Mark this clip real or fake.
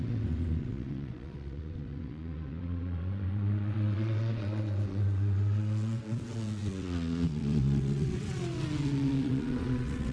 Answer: fake